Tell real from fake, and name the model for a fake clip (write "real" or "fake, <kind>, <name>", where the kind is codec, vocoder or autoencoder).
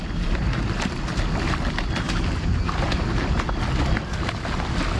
real